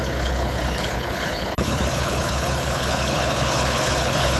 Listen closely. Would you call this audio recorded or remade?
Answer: remade